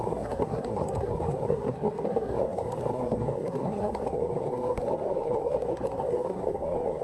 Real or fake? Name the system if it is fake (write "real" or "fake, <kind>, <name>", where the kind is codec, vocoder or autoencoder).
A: fake, codec, SNAC